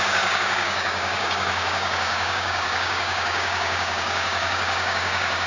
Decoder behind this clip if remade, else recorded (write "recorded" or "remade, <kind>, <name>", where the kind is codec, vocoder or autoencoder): remade, codec, DAC